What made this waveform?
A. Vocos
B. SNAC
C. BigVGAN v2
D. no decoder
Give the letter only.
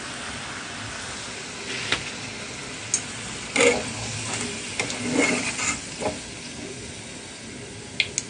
D